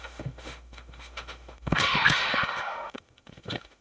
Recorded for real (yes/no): no